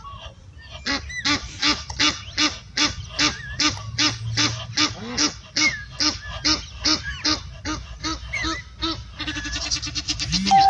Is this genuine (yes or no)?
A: yes